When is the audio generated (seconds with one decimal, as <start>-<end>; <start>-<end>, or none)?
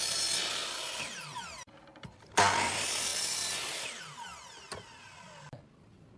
3.1-4.0